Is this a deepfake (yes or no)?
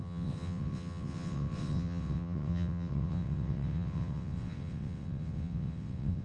yes